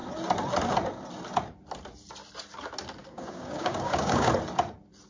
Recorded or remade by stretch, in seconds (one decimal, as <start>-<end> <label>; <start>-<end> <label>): 0.0-3.0 recorded; 3.0-4.3 remade; 4.3-5.1 recorded